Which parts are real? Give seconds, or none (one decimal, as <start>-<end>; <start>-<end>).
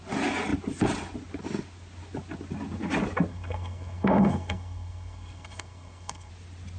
0.0-3.3; 6.3-6.8